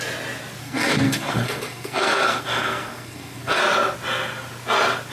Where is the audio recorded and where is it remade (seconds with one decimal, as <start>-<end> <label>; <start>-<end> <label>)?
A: 0.0-0.6 recorded; 0.6-3.6 remade; 3.6-5.1 recorded